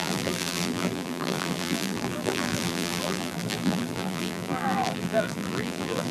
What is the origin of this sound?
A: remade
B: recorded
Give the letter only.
A